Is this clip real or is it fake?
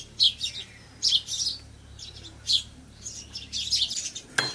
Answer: real